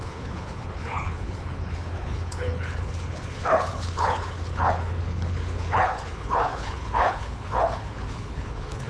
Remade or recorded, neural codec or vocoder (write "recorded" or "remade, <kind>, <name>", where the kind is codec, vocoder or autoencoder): remade, codec, HILCodec